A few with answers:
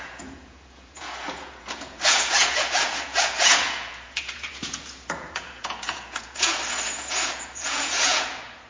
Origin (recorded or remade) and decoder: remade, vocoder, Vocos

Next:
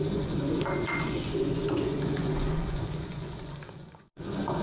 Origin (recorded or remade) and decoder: remade, vocoder, Vocos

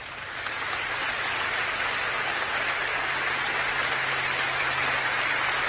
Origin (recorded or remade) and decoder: recorded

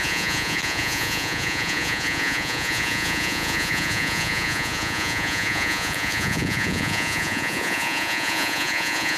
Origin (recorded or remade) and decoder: remade, vocoder, Vocos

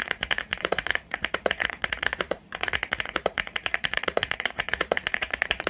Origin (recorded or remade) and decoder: remade, vocoder, Vocos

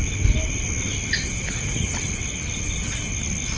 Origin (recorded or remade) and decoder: recorded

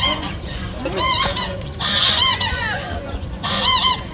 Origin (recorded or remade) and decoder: remade, vocoder, Vocos